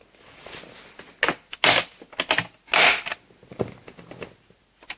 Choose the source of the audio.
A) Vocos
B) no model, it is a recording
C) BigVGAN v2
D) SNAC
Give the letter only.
B